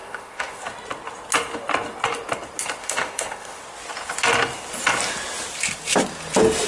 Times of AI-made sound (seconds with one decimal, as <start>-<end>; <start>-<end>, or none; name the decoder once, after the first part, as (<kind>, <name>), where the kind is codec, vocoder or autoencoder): 0.0-0.6 (autoencoder, DAC-VAE); 2.8-3.6